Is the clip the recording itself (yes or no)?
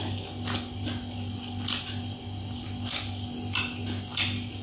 yes